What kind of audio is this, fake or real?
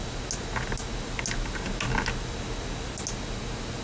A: real